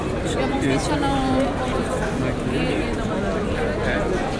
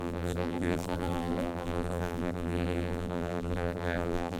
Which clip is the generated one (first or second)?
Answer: second